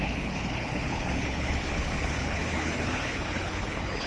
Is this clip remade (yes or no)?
yes